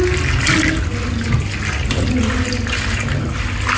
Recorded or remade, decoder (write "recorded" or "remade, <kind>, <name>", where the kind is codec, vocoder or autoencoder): recorded